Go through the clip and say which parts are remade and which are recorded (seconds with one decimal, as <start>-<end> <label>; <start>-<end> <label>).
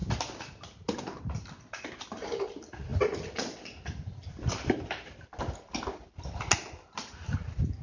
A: 0.0-1.2 recorded; 1.2-7.8 remade